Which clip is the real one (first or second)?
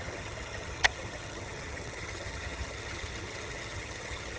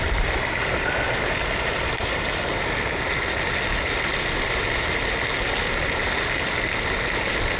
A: second